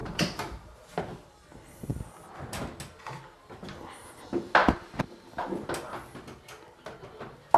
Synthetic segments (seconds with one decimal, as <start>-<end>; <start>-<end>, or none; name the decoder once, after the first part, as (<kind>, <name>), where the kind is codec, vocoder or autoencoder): 0.0-1.0 (vocoder, BigVGAN v2); 4.6-5.4